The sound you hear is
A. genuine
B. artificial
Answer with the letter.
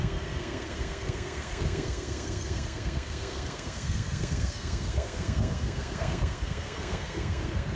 B